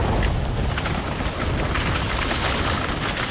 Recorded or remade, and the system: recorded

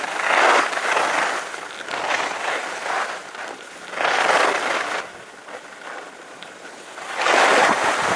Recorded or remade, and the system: recorded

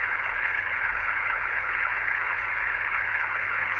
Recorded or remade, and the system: remade, codec, HILCodec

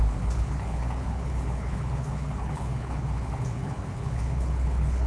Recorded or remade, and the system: remade, codec, HILCodec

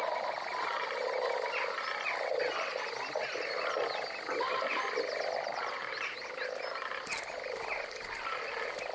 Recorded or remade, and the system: recorded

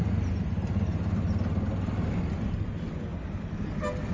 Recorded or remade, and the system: recorded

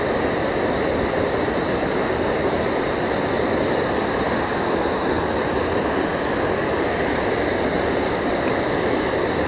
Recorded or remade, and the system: recorded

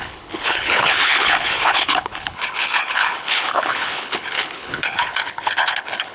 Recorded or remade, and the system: remade, codec, HILCodec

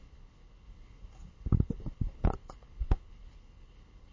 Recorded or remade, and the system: remade, codec, HILCodec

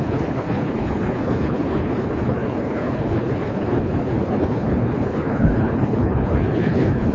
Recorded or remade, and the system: remade, codec, HILCodec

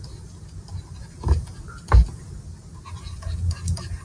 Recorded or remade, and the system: recorded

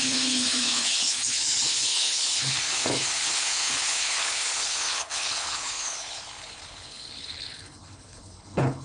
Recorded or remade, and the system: remade, codec, HILCodec